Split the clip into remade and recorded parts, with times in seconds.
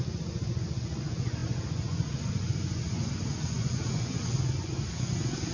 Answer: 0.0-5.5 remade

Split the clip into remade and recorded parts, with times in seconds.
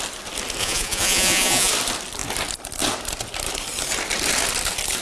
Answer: 0.0-0.6 recorded; 0.6-1.7 remade; 1.7-5.0 recorded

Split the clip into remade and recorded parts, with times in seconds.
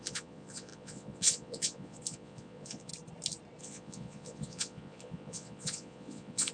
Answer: 0.0-2.9 remade; 2.9-3.6 recorded; 3.6-6.5 remade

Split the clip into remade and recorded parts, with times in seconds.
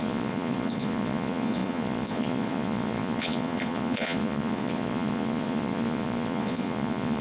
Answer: 0.0-7.2 remade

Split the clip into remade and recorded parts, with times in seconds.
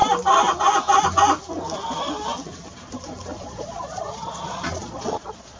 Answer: 0.0-3.3 recorded; 3.3-5.6 remade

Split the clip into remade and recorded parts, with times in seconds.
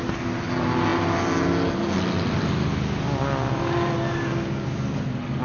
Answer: 0.0-5.4 recorded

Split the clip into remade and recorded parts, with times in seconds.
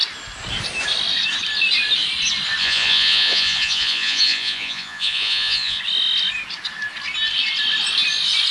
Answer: 0.0-2.6 recorded; 2.6-5.8 remade; 5.8-8.5 recorded